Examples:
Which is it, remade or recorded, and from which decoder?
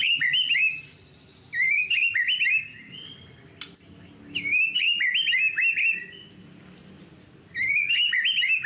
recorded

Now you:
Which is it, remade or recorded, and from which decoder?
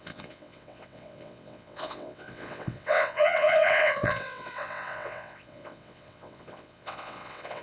remade, vocoder, WaveNeXt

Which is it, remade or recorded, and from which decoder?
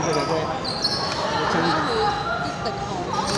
recorded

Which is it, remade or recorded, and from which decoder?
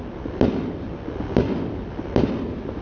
recorded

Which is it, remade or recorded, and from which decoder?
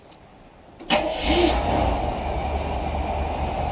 recorded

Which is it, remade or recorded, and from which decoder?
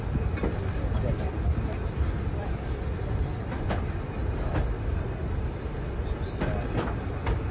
recorded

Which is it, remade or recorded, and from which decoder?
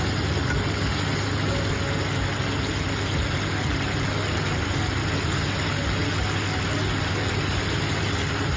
recorded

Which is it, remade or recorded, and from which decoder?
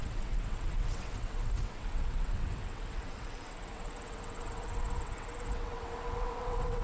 remade, vocoder, WaveNeXt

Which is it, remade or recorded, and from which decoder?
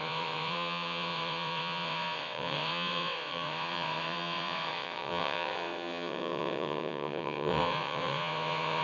remade, vocoder, WaveNeXt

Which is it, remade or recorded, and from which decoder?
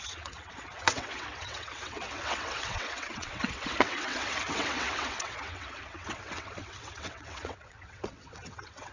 remade, vocoder, WaveNeXt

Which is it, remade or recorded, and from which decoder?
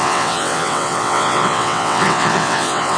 remade, vocoder, WaveNeXt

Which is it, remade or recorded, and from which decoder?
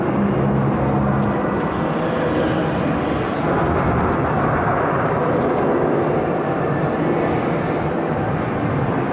recorded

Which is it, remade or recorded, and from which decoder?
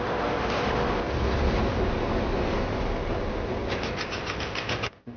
recorded